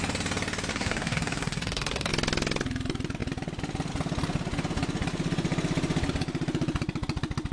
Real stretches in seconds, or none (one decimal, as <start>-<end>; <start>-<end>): 0.0-0.7; 2.1-7.5